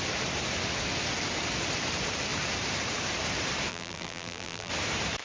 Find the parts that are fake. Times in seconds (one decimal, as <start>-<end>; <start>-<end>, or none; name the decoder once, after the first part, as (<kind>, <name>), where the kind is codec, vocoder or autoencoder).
3.7-4.7 (vocoder, BigVGAN v2)